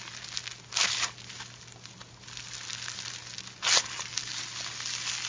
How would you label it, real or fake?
real